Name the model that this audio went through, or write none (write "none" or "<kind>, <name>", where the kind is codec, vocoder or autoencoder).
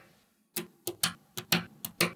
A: none